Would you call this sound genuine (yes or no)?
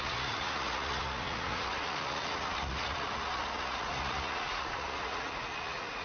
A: no